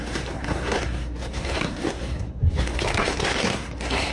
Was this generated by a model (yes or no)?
yes